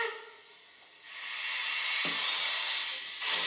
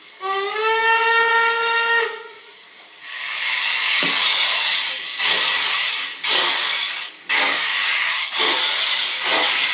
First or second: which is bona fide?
first